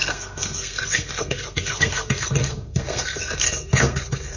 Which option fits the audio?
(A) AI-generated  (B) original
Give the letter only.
A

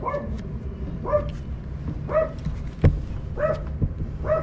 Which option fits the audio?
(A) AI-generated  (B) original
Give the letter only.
B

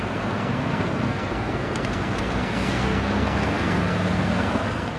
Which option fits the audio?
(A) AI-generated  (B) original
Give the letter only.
A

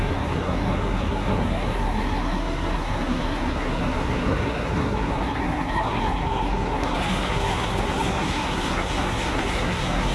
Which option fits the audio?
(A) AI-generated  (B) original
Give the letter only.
A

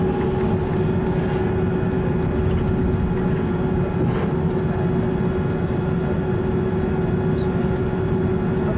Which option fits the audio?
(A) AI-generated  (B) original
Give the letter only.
B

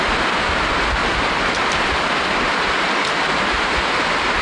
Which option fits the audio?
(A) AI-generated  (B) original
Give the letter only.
B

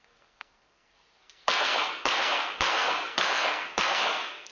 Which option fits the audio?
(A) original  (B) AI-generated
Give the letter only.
B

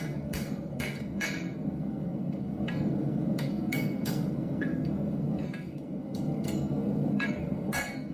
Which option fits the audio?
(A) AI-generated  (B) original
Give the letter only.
A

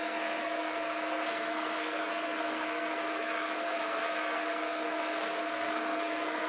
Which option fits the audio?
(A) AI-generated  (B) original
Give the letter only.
A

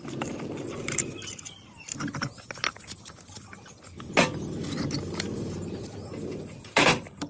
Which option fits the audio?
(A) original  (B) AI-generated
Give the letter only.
A